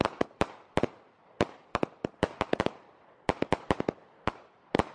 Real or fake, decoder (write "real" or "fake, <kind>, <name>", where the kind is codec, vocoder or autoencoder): real